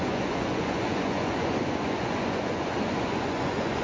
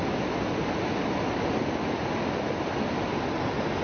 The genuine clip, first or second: second